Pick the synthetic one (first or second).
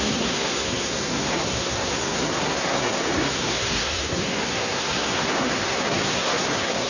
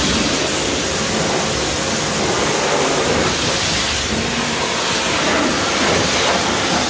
first